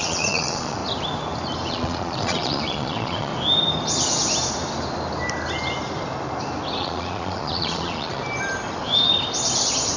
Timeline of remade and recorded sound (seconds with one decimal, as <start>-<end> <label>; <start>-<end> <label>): 0.0-0.8 remade; 0.8-1.7 recorded; 1.7-3.3 remade; 3.3-6.8 recorded; 6.8-8.2 remade; 8.2-10.0 recorded